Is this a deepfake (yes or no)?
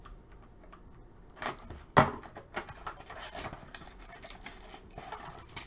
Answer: no